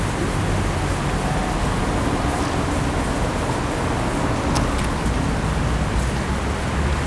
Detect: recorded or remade recorded